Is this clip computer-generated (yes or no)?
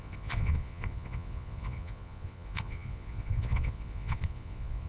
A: yes